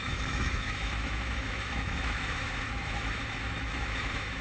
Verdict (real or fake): fake